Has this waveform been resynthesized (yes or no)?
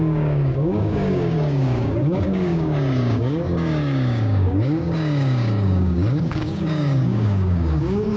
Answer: yes